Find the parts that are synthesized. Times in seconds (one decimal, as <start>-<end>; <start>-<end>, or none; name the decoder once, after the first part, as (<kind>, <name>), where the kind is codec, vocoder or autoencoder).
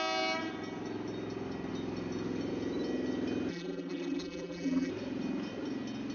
3.5-4.9 (vocoder, BigVGAN v2)